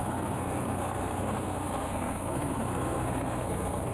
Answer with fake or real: fake